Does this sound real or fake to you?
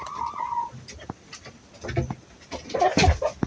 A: real